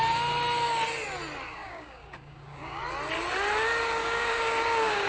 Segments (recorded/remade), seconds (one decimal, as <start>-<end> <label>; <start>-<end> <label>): 0.0-1.6 recorded; 1.6-2.8 remade; 2.8-4.0 recorded; 4.0-5.1 remade